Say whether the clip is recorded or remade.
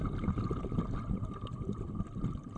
recorded